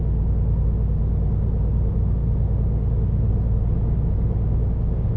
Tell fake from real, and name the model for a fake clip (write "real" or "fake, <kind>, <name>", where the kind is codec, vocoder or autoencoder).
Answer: real